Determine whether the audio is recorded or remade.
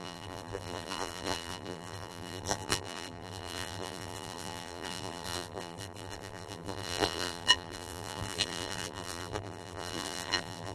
remade